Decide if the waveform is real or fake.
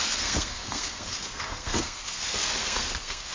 fake